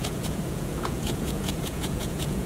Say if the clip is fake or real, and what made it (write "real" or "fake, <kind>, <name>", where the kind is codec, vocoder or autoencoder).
fake, vocoder, Vocos